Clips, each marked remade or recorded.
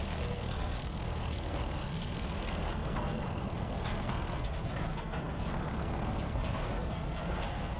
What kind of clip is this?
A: remade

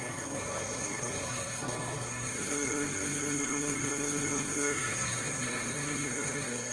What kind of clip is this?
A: remade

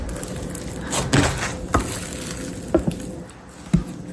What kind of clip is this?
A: recorded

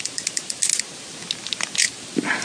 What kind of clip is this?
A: recorded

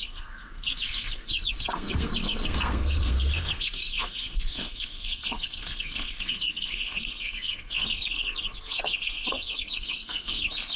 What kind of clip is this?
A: remade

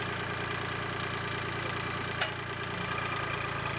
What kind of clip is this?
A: recorded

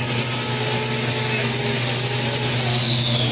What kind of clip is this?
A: recorded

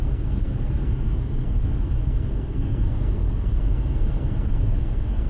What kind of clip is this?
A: remade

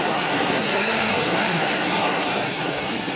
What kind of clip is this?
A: remade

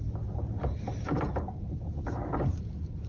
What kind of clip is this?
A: recorded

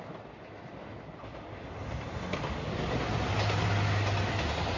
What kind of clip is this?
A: recorded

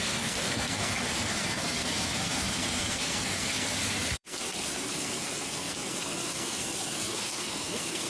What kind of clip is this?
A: remade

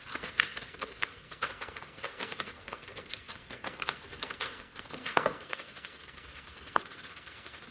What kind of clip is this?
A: remade